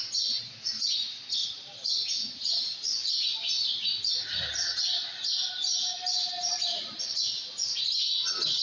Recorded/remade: recorded